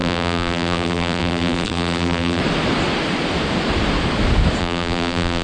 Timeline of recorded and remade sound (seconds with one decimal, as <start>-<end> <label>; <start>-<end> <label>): 0.0-2.4 remade; 2.4-4.6 recorded; 4.6-5.4 remade